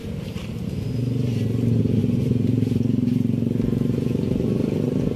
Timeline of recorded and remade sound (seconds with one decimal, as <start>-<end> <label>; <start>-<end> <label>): 0.0-0.8 remade; 0.8-2.0 recorded; 2.0-5.2 remade